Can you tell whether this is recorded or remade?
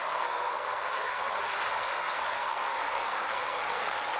remade